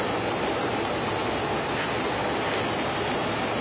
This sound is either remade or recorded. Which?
recorded